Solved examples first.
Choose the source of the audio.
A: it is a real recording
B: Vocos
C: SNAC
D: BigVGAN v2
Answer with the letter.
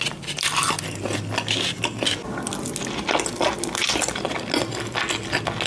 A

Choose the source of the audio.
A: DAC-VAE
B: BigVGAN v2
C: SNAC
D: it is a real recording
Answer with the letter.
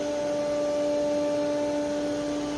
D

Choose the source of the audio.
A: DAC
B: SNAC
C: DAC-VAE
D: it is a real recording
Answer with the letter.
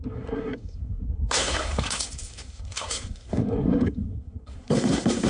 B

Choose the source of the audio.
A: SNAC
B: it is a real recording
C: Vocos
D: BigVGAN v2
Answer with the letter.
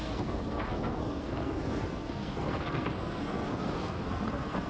A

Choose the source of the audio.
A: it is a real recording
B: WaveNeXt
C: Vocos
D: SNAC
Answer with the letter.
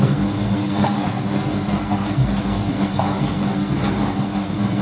D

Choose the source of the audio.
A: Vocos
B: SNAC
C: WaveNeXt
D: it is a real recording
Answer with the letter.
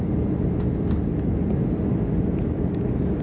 D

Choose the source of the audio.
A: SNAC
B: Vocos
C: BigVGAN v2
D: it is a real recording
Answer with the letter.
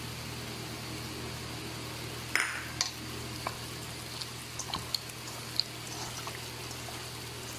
D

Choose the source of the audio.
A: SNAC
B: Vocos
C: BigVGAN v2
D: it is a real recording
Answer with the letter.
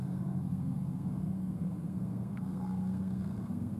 A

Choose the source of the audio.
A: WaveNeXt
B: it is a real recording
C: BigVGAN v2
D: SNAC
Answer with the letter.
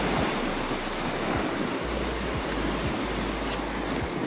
B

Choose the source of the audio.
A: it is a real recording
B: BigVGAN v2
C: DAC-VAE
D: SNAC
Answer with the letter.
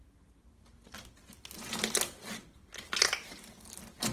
A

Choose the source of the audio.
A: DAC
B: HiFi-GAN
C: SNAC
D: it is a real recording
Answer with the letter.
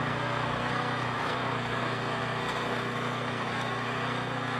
C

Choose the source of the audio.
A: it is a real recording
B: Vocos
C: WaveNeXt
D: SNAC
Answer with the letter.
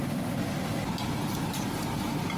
A